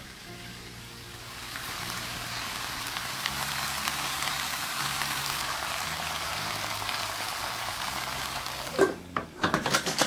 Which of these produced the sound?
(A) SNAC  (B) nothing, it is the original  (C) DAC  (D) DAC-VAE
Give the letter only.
C